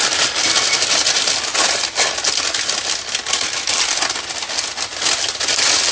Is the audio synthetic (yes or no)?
no